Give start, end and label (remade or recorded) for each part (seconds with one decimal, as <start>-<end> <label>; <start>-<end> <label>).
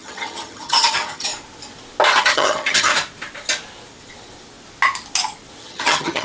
0.0-1.3 remade; 1.3-2.2 recorded; 2.2-2.9 remade; 2.9-5.6 recorded; 5.6-6.2 remade